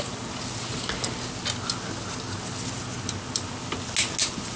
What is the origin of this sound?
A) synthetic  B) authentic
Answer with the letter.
B